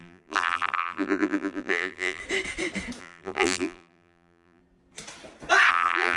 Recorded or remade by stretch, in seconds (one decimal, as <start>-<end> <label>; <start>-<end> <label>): 0.0-2.2 remade; 2.2-3.0 recorded; 3.0-4.6 remade; 4.6-5.7 recorded; 5.7-6.2 remade